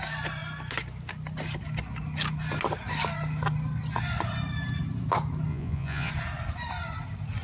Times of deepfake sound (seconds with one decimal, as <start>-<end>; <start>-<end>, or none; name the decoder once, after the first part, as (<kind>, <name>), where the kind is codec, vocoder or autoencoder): 5.5-6.1 (vocoder, Vocos)